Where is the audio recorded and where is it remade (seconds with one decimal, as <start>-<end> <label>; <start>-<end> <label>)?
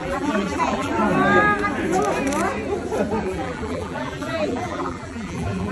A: 0.0-0.9 remade; 0.9-3.2 recorded; 3.2-5.7 remade